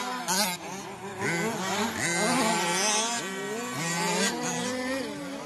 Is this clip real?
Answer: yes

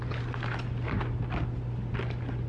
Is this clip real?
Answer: yes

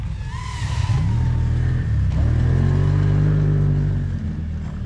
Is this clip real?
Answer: yes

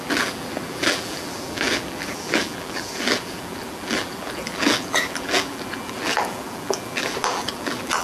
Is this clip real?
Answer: no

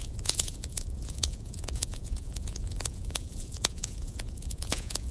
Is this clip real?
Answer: no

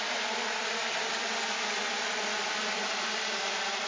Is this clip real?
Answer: no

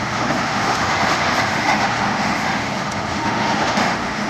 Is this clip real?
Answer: no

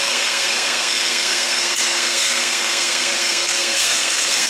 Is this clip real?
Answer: no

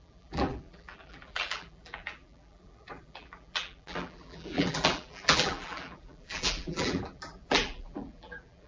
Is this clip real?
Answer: no